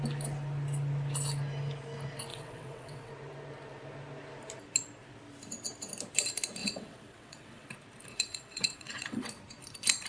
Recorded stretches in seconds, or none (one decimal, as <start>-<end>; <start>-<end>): 0.0-2.3; 3.1-6.6; 7.7-8.1; 9.3-10.1